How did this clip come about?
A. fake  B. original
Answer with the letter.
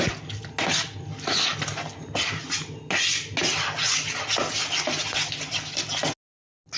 B